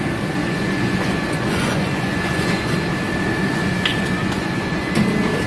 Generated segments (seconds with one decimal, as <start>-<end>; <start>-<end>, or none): 0.4-2.7; 3.5-4.9